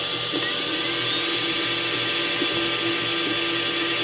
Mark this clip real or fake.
real